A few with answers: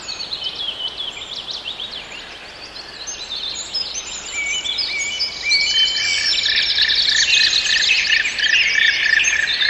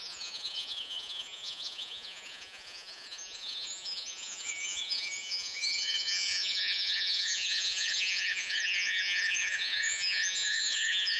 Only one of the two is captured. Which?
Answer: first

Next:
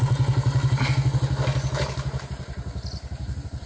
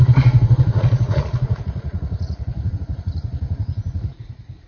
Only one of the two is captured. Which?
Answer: first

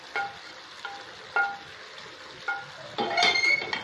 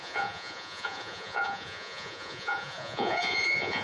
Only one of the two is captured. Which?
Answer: first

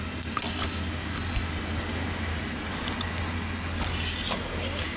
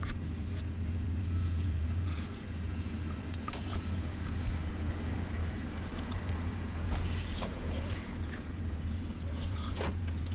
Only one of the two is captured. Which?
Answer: first